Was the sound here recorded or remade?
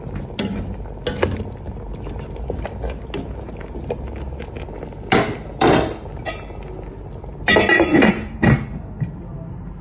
recorded